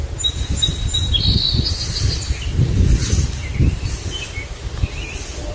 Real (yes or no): yes